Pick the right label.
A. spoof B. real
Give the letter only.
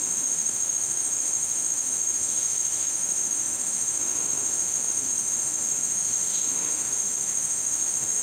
A